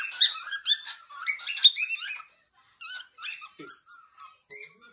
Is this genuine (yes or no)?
yes